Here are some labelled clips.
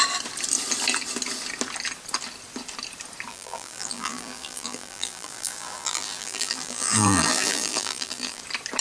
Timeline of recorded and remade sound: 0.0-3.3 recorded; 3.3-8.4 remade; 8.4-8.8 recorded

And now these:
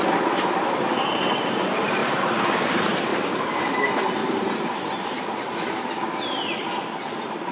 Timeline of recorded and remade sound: 0.0-3.1 recorded; 3.1-3.6 remade; 3.6-4.2 recorded; 4.2-6.3 remade; 6.3-7.5 recorded

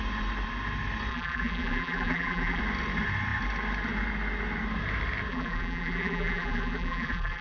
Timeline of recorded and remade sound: 0.0-1.1 recorded; 1.1-2.6 remade; 2.6-5.3 recorded; 5.3-7.4 remade

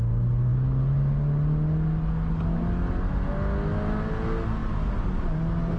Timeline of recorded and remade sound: 0.0-5.8 recorded

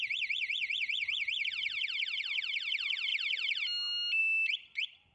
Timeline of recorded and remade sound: 0.0-5.1 recorded